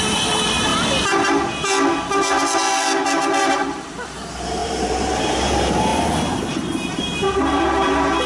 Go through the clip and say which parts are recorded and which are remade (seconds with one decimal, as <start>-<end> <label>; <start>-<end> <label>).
0.0-0.7 remade; 0.7-3.4 recorded; 3.4-8.3 remade